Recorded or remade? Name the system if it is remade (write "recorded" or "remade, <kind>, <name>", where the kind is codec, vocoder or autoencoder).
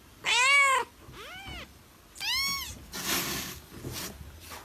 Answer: recorded